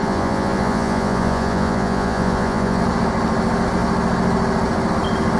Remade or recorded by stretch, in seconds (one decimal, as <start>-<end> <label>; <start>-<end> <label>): 0.0-2.8 remade; 2.8-5.4 recorded